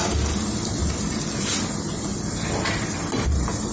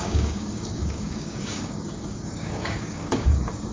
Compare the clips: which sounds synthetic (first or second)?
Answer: second